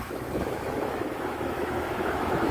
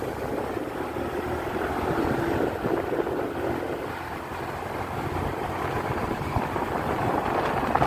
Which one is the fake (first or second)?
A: first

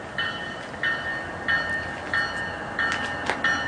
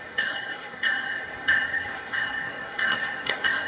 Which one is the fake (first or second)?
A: second